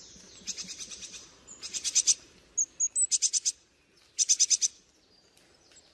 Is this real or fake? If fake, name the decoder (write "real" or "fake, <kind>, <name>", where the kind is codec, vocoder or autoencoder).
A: real